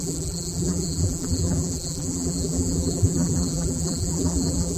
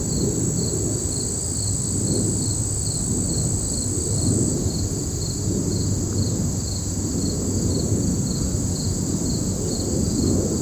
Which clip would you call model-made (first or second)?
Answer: first